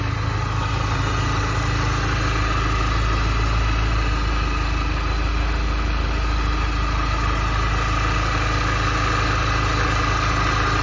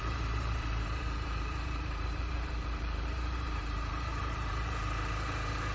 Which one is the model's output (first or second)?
second